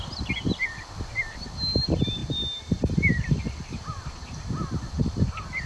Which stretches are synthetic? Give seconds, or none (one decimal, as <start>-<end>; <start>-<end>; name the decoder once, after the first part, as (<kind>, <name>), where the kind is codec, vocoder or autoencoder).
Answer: none